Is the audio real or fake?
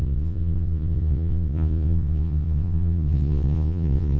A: fake